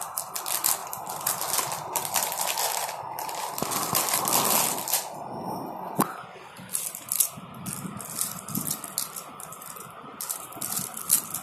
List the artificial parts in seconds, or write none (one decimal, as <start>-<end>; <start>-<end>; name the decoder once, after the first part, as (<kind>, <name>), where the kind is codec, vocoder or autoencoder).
none